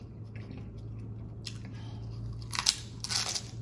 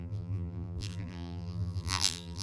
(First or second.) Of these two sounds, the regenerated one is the second